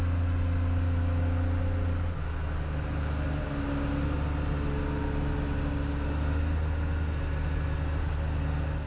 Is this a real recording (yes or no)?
yes